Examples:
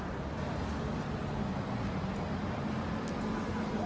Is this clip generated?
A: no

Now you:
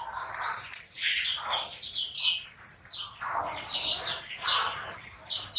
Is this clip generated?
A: no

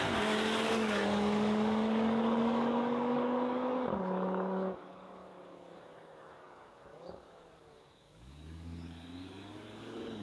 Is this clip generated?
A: yes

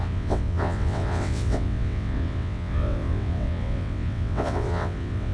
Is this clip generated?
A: yes